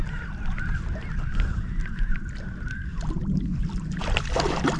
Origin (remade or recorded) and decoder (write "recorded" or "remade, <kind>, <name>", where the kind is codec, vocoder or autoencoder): recorded